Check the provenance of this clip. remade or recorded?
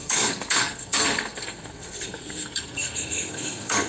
remade